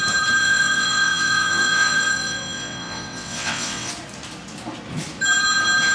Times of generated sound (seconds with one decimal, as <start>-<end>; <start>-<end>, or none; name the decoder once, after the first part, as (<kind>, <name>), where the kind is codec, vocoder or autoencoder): 0.4-3.9 (vocoder, WaveNeXt)